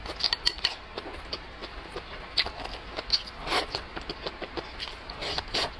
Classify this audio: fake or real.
real